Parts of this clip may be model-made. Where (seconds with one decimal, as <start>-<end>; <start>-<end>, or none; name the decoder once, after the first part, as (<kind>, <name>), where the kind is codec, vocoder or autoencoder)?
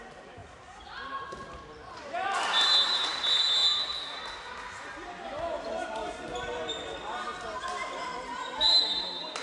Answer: none